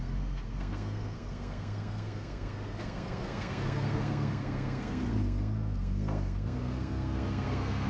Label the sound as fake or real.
fake